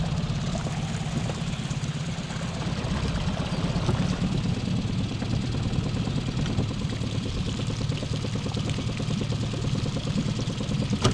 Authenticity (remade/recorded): recorded